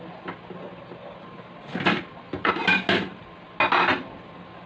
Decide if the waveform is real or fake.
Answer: real